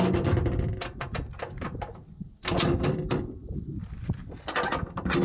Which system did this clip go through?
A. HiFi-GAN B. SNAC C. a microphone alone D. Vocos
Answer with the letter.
C